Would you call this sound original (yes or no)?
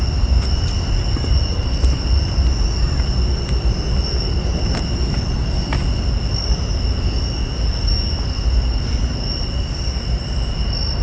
yes